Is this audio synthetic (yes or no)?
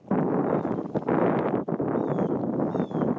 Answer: no